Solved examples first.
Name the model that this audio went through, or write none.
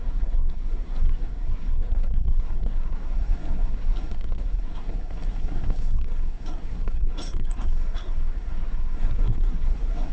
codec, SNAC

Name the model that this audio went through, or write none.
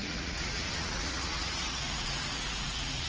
vocoder, Vocos